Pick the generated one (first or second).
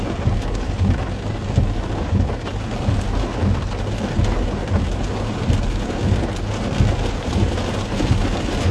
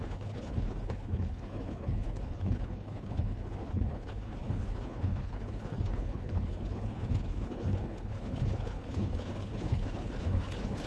second